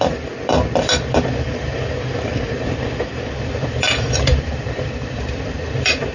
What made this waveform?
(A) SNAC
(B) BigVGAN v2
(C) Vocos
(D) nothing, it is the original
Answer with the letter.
B